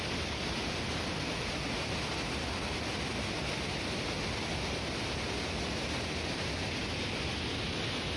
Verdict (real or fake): real